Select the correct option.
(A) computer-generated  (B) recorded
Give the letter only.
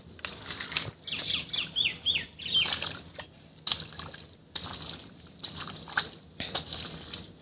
B